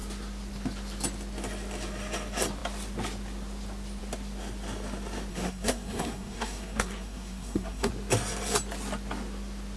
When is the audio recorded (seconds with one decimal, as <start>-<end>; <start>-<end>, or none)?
0.0-5.3; 7.9-9.8